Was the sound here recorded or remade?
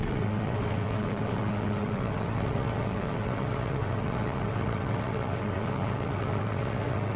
remade